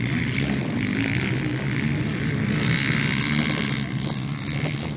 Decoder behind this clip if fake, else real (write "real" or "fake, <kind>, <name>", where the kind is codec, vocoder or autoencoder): real